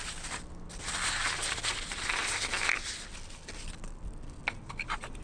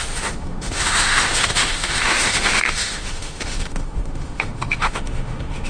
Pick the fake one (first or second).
second